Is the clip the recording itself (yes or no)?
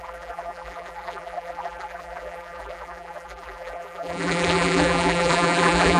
no